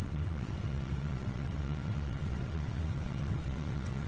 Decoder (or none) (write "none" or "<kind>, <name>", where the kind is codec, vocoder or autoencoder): vocoder, WaveNeXt